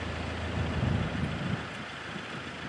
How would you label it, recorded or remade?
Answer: recorded